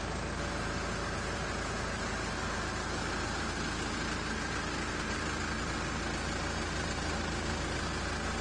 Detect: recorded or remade recorded